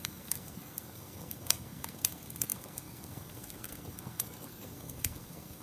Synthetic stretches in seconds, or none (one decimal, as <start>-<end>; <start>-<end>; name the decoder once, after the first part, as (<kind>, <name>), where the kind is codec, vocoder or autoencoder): 0.0-5.6 (codec, SNAC)